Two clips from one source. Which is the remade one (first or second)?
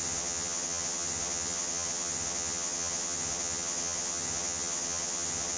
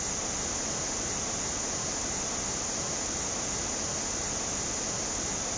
first